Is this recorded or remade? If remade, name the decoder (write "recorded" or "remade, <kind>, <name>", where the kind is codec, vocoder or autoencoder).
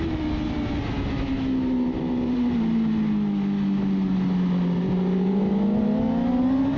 recorded